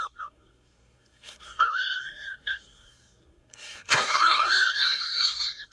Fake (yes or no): yes